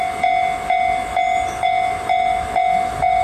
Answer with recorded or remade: remade